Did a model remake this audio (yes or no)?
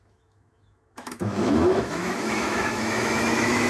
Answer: yes